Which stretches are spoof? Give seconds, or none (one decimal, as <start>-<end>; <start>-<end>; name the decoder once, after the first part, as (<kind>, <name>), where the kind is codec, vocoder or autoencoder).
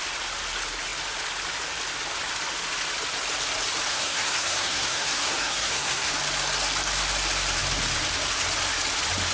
3.9-6.1 (codec, SNAC)